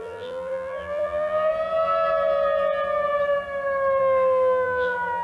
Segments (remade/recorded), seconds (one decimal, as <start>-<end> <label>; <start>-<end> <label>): 0.0-1.5 remade; 1.5-4.0 recorded; 4.0-5.2 remade